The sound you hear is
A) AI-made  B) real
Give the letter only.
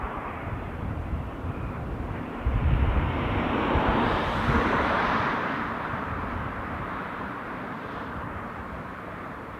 A